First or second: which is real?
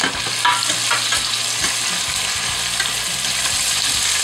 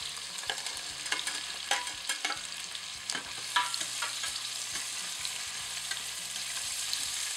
first